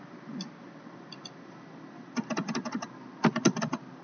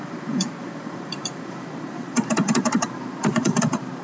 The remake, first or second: second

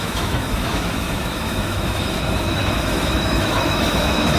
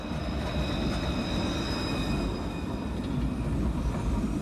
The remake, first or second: first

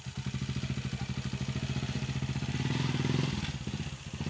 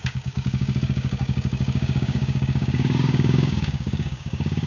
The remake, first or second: second